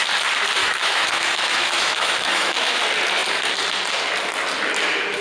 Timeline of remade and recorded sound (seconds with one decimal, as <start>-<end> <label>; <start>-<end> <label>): 0.0-0.6 recorded; 0.6-2.8 remade; 2.8-5.2 recorded